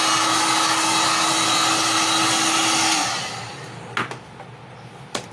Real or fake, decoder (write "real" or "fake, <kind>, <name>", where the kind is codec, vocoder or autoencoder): real